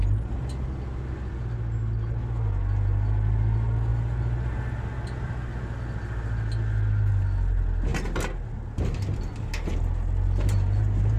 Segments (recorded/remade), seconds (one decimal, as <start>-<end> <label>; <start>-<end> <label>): 0.0-11.2 recorded